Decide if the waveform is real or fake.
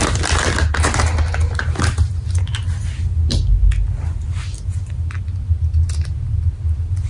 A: real